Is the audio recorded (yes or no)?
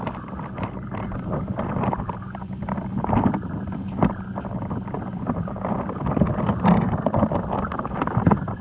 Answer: no